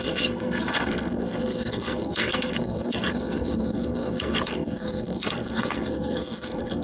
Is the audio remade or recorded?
remade